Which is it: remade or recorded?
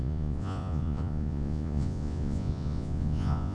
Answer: remade